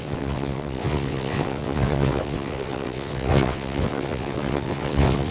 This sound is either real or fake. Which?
fake